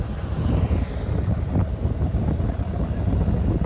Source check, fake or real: real